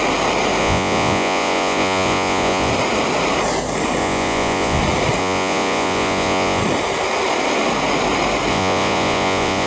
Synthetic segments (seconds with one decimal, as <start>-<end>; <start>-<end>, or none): 0.6-2.7; 4.0-4.8; 5.2-6.6; 8.5-9.7